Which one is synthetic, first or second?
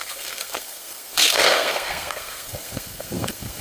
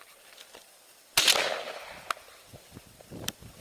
first